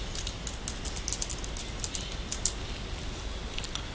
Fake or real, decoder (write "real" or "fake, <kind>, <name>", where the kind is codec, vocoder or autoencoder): real